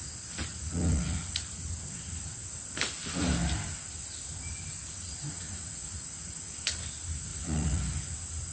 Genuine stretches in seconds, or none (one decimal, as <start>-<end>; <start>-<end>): 0.0-0.5; 1.7-4.7; 6.6-7.3; 7.8-8.5